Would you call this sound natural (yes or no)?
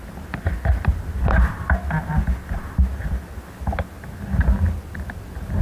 yes